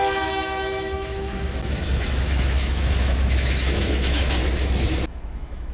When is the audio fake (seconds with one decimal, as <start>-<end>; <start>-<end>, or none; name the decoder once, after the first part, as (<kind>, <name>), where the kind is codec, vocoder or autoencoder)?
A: 0.0-4.4 (autoencoder, DAC-VAE); 5.1-5.7